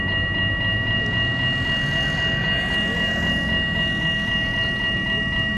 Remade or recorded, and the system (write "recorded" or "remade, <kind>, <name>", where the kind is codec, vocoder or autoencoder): recorded